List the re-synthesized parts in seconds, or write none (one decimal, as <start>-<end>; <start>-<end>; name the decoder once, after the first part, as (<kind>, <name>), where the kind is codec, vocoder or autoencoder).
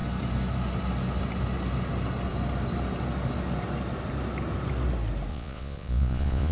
5.3-6.5 (vocoder, Vocos)